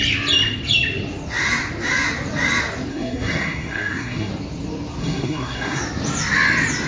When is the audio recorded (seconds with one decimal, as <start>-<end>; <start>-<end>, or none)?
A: 0.0-2.9; 4.3-5.0; 5.8-6.9